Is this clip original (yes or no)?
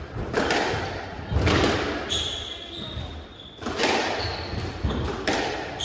no